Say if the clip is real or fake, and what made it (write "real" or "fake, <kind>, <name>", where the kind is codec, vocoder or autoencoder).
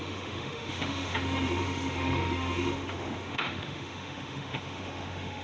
fake, autoencoder, DAC-VAE